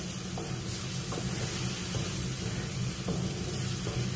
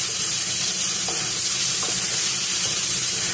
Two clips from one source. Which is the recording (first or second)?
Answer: first